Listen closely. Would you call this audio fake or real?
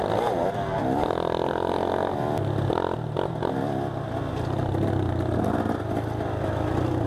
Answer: real